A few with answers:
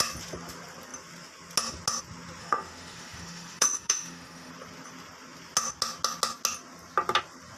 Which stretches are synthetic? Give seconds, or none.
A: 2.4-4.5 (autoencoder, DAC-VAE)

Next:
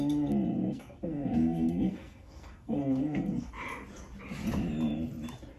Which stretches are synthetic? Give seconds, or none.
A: 0.6-3.5 (codec, SNAC)

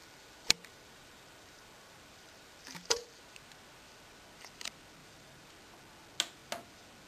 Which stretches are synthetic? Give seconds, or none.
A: 0.0-3.2 (vocoder, BigVGAN v2); 5.0-5.5

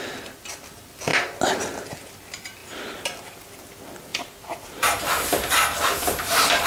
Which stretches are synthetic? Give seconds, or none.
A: 4.1-5.5 (vocoder, BigVGAN v2)

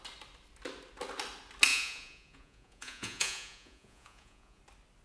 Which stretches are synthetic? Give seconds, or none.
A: 1.7-4.6 (vocoder, Vocos)

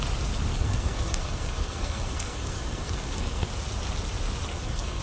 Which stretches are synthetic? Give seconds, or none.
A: 0.5-3.5 (codec, SNAC); 4.5-5.0

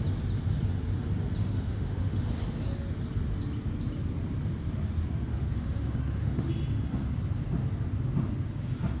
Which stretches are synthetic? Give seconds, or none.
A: 1.4-2.2 (autoencoder, DAC-VAE); 5.3-6.5

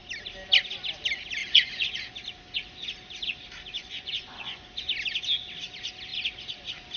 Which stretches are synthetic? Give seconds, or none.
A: 1.4-2.0 (vocoder, Vocos); 3.8-4.7